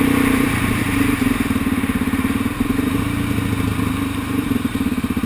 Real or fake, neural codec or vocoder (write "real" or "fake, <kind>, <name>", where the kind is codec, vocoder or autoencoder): fake, vocoder, BigVGAN v2